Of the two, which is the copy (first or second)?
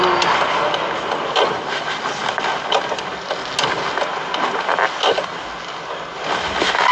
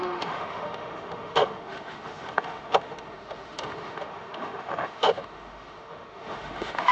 second